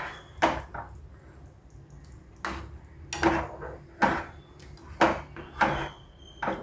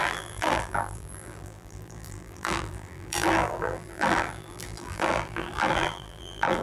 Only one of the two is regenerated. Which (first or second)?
second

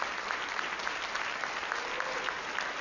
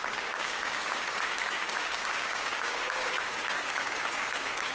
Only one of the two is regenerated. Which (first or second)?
second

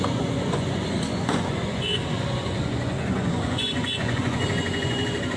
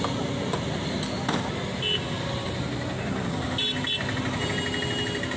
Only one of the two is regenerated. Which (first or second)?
first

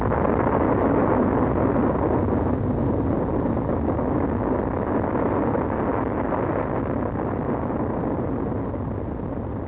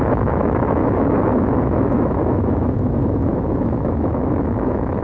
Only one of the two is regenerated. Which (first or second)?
second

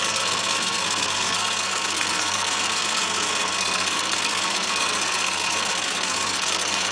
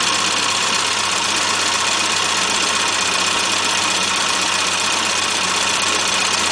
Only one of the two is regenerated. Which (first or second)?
first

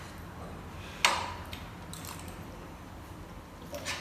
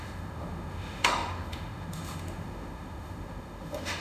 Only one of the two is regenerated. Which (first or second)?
second